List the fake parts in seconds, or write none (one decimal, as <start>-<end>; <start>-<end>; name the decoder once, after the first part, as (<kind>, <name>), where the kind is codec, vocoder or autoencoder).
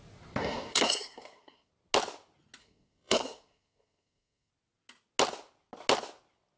0.4-1.7 (codec, SNAC); 2.6-4.5